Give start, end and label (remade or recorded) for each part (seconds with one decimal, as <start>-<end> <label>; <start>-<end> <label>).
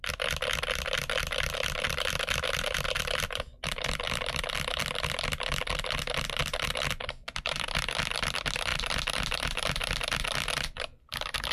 0.0-11.5 recorded